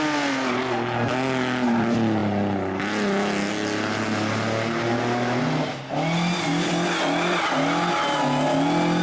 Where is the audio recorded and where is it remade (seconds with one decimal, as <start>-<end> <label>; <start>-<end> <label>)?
0.0-9.0 recorded